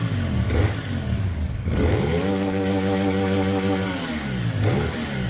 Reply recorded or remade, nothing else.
remade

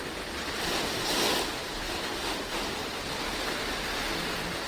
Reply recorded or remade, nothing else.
recorded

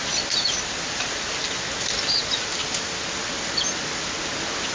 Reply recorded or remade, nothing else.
recorded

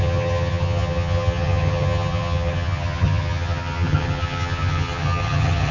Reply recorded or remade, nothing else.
remade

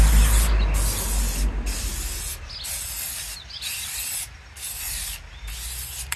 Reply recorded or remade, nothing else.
recorded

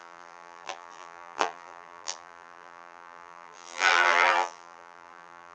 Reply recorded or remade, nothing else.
remade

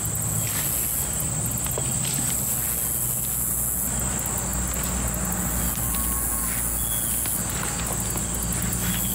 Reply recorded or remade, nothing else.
recorded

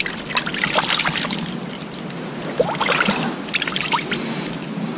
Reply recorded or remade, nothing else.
recorded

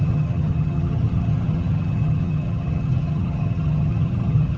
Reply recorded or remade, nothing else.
remade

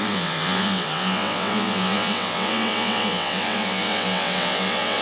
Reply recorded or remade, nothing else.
remade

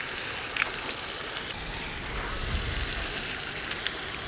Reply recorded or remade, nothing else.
recorded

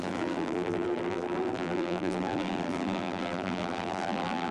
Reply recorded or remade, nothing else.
remade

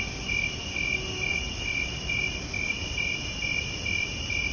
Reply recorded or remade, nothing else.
recorded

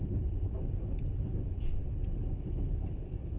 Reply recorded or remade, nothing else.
recorded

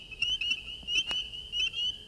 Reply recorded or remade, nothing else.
recorded